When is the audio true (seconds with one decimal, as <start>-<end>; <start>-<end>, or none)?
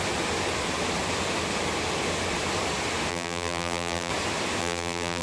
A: 0.0-3.1; 4.1-4.6